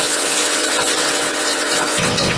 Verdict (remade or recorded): remade